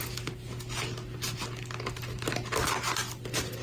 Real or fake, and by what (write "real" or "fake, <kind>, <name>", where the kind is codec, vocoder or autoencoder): real